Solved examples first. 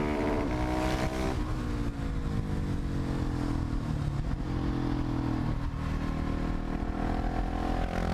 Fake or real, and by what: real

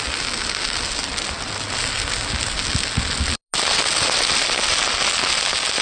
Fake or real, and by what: real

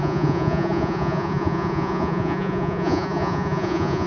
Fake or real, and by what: fake, vocoder, Vocos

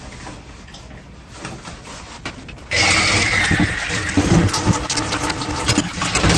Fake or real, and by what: real